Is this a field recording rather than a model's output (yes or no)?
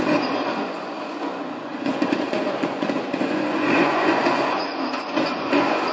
no